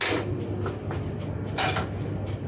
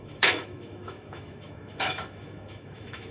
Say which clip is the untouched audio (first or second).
first